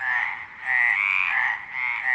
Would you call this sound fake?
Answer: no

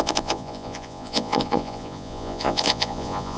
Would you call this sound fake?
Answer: yes